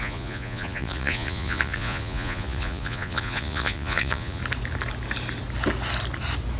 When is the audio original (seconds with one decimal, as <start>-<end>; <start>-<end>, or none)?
4.4-6.6

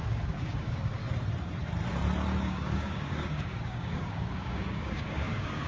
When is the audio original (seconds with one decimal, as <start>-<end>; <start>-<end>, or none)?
1.0-2.4

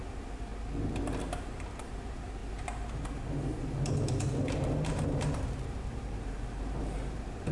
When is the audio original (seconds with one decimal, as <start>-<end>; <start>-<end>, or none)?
0.5-1.2

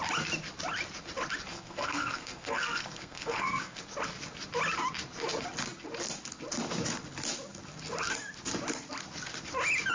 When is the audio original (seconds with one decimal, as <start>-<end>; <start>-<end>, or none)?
0.0-1.5; 3.8-9.9

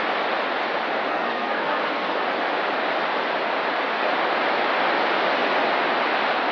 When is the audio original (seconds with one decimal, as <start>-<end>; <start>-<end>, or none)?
0.0-1.1; 2.2-6.5

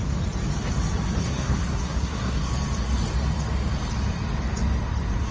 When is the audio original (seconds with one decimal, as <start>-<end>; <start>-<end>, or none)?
0.0-1.2; 2.5-5.3

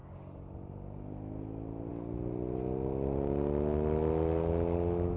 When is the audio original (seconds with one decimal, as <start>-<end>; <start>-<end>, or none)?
0.0-5.2

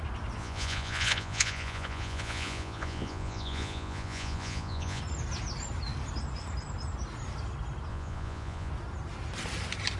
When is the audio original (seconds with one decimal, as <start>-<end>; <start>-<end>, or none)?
0.0-0.4; 5.0-7.9; 8.7-10.0